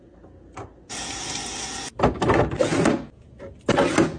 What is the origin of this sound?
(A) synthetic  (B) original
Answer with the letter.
B